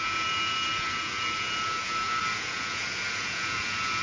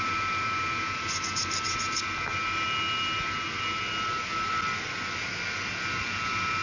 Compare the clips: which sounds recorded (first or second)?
second